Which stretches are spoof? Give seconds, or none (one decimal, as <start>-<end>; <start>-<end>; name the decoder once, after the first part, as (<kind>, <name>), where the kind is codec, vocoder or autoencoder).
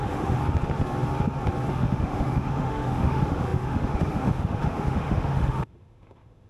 0.0-0.4 (autoencoder, DAC-VAE); 1.7-6.5